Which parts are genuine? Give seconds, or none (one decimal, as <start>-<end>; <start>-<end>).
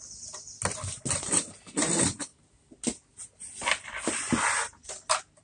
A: 2.3-3.1